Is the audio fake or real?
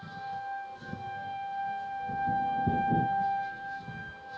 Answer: fake